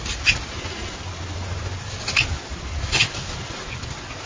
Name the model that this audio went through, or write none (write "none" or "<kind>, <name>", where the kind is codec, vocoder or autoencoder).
none